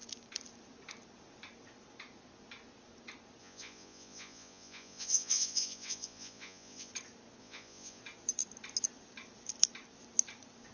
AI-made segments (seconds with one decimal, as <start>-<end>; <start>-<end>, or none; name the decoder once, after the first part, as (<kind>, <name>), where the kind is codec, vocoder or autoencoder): 3.4-6.9 (vocoder, Vocos); 7.4-8.0